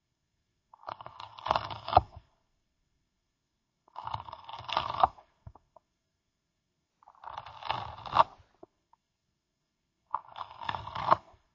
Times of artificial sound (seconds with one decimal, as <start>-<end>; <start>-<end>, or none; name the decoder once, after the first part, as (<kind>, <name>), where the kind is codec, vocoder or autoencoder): 0.0-6.9 (codec, SNAC); 8.6-11.5